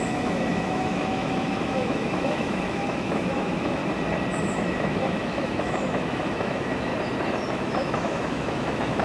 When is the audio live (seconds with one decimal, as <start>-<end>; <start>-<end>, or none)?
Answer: 3.8-4.4; 6.9-7.5